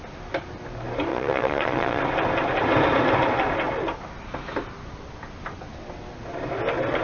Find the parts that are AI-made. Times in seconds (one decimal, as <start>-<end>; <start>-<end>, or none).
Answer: 1.1-2.0